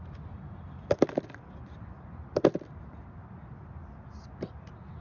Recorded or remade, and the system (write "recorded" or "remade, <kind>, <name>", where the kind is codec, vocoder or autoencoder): recorded